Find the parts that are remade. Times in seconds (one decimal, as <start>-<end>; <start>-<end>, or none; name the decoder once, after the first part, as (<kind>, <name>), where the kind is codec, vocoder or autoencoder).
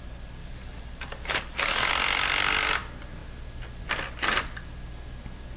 0.4-1.9 (codec, DAC)